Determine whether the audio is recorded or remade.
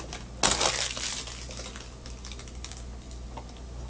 recorded